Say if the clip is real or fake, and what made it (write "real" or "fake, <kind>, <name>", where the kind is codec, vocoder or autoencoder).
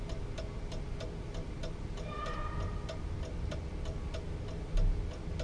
real